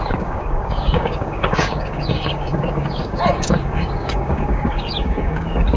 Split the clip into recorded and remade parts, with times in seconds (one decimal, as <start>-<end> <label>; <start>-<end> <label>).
0.0-5.8 remade